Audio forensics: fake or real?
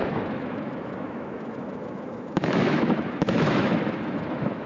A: fake